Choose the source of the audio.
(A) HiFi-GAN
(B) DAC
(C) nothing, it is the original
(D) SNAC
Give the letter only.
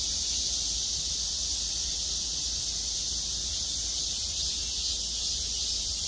C